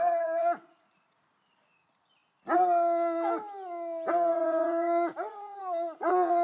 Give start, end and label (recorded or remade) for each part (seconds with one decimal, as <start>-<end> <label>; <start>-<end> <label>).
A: 0.0-2.2 remade; 2.2-4.1 recorded; 4.1-6.4 remade